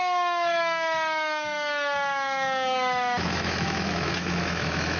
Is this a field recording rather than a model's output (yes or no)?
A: no